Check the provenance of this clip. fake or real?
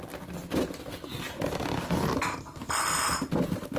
real